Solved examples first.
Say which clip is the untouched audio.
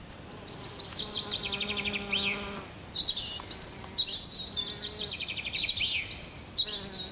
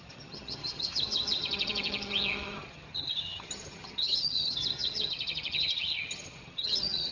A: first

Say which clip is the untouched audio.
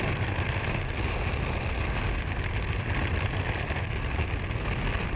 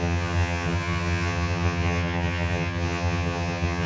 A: first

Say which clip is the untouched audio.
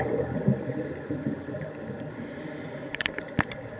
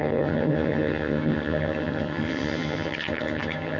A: first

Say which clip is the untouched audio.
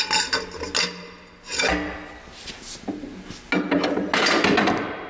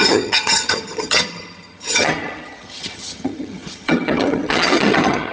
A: first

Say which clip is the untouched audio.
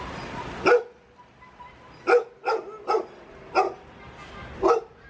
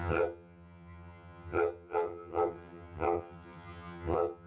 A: first